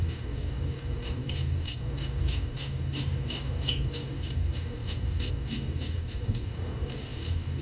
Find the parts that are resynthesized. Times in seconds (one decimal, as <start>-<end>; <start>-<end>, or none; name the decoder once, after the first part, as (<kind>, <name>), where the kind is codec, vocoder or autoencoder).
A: 0.0-7.6 (codec, DAC)